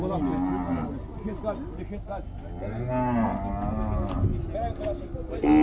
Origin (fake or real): real